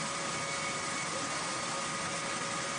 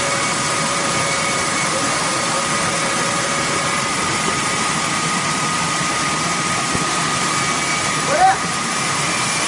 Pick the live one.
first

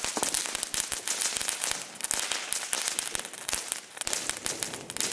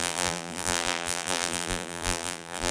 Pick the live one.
first